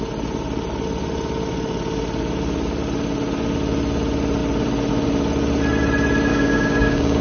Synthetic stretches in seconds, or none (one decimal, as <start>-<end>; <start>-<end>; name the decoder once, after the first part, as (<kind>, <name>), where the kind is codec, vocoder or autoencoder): 6.3-7.2 (codec, DAC)